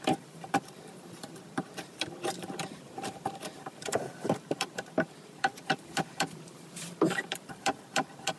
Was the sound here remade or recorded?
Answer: remade